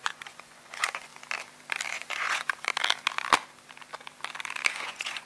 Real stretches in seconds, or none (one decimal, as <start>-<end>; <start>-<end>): 1.1-1.9; 2.7-4.7